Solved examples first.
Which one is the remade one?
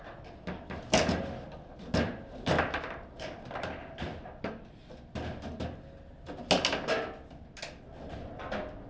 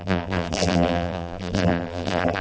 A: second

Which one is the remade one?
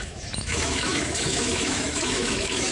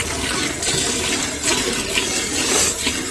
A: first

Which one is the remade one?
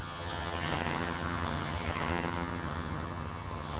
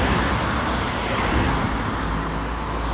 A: first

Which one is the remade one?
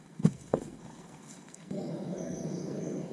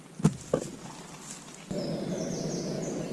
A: first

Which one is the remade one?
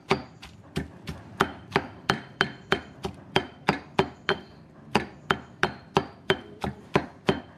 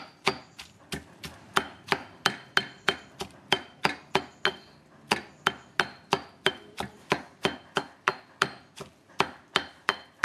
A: first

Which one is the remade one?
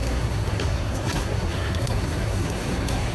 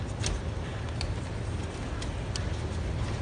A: first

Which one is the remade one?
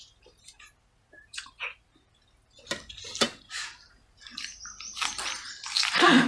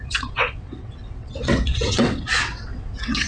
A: second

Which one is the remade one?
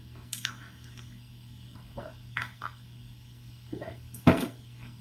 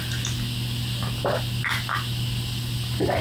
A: first